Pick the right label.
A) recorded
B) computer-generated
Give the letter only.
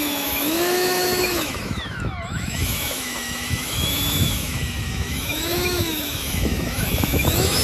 B